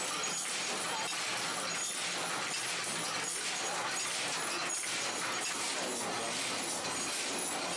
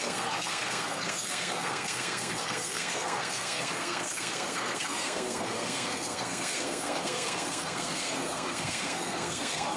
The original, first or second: first